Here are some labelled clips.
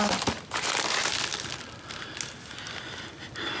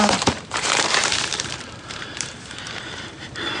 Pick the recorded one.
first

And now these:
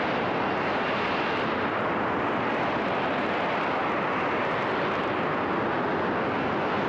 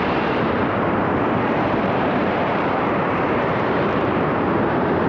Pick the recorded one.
first